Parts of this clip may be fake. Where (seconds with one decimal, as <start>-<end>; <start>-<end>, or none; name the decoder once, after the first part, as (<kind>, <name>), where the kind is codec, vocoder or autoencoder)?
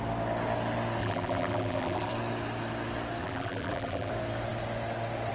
1.0-2.1 (vocoder, BigVGAN v2); 3.2-4.1